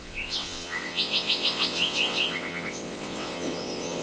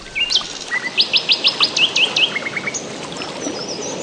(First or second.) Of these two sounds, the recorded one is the second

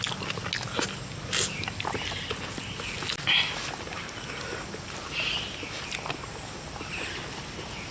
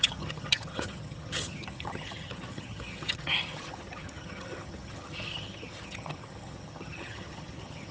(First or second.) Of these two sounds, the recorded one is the first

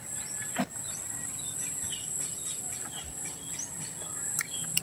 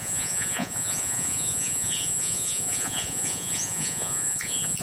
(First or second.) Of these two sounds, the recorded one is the first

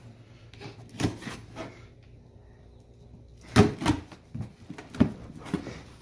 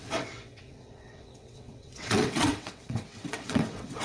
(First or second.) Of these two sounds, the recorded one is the first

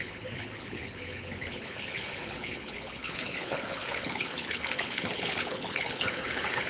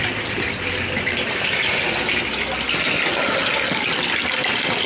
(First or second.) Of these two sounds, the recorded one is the second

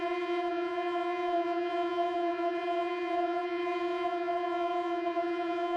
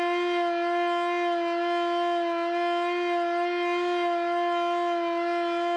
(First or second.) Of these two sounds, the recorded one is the second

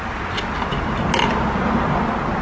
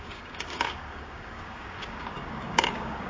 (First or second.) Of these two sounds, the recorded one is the first